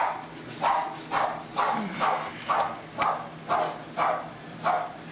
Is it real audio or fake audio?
real